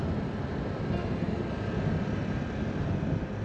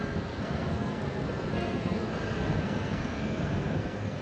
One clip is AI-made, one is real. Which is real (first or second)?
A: first